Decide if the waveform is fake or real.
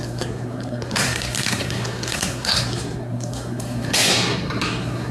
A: fake